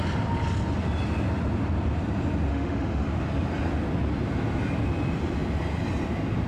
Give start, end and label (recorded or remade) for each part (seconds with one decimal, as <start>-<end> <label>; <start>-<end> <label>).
0.0-2.5 recorded; 2.5-3.1 remade; 3.1-6.5 recorded